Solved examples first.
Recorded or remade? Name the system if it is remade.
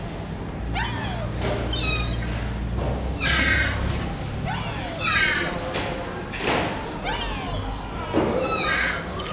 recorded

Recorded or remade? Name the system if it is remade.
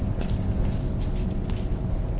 recorded